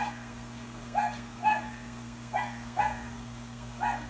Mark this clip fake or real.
fake